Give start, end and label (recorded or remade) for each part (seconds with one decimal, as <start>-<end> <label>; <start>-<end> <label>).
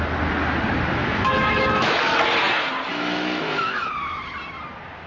0.0-1.0 recorded; 1.0-2.1 remade; 2.1-2.9 recorded; 2.9-3.9 remade; 3.9-5.1 recorded